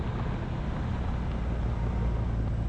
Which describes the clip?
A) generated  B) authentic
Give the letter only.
B